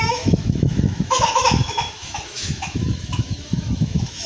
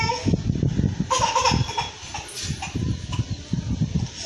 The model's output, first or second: first